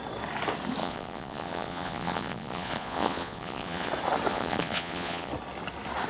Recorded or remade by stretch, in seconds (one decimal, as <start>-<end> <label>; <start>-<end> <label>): 0.0-0.8 recorded; 0.8-3.9 remade; 3.9-4.3 recorded; 4.3-5.3 remade; 5.3-6.1 recorded